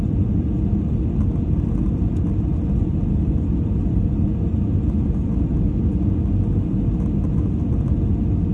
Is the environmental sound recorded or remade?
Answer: recorded